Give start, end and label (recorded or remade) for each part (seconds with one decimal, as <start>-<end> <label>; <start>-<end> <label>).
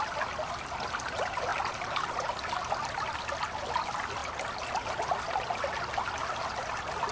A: 0.0-1.5 recorded; 1.5-2.3 remade; 2.3-7.1 recorded